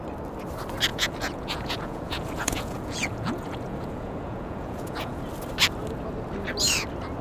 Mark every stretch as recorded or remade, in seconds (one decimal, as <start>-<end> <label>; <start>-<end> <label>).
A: 0.0-0.9 recorded; 0.9-5.2 remade; 5.2-7.2 recorded

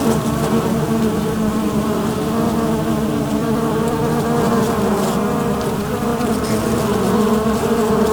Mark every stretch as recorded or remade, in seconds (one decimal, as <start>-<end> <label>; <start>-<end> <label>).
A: 0.0-3.4 recorded; 3.4-4.0 remade; 4.0-8.1 recorded

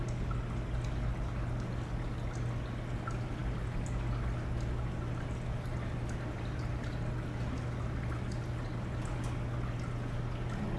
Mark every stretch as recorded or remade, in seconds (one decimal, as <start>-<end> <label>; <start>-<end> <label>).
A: 0.0-10.8 recorded

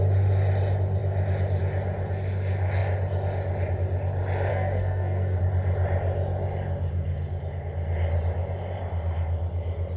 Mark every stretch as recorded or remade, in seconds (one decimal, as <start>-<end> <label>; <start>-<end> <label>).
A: 0.0-4.5 recorded; 4.5-5.4 remade; 5.4-10.0 recorded